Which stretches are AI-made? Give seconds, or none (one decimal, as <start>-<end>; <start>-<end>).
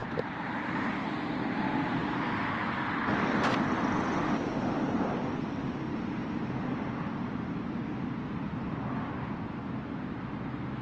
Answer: 0.0-0.9